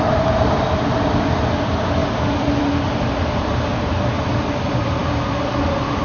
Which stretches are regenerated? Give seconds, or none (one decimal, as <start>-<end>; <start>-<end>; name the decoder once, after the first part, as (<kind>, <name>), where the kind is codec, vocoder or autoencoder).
2.0-2.6 (vocoder, BigVGAN v2); 5.0-6.0